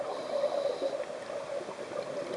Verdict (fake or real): real